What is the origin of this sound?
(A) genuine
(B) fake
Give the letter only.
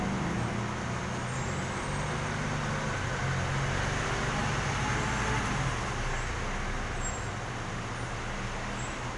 A